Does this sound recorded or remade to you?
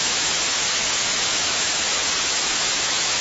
remade